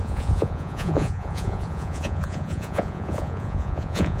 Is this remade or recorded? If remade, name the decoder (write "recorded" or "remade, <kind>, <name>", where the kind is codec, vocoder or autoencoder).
remade, vocoder, Vocos